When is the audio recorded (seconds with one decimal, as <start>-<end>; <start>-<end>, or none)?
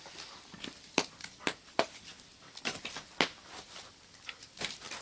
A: 2.1-3.9